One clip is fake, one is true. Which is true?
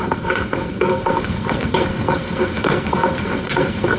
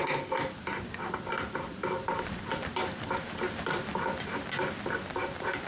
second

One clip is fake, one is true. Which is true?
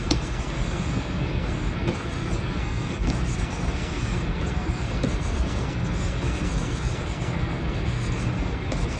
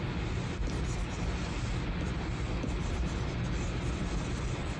second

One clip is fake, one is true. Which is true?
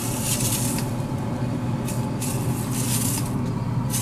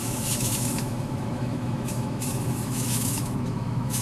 first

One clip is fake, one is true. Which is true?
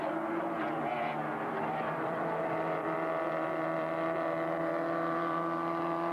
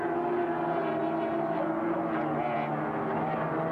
second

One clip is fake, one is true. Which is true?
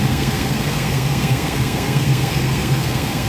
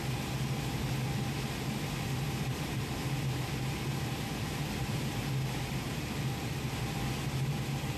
second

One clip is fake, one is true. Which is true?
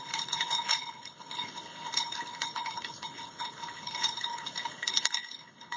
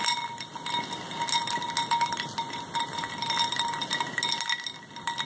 second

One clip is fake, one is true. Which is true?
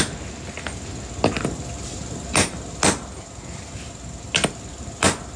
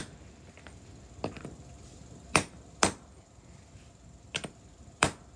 first